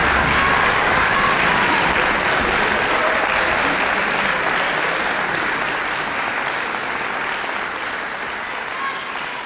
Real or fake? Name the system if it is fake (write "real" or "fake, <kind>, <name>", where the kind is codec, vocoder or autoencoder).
real